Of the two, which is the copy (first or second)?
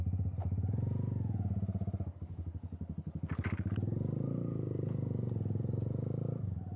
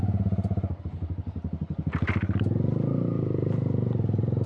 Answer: second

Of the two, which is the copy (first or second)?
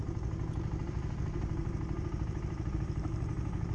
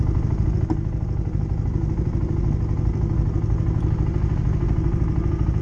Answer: first